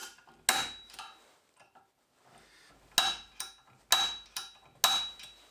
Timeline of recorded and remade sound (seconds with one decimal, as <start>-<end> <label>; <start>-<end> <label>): 0.0-5.5 recorded